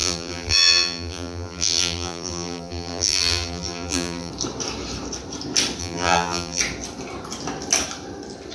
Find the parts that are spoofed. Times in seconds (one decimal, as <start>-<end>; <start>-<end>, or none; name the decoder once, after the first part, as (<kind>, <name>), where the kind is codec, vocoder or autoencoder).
0.0-4.3 (vocoder, BigVGAN v2); 5.8-6.6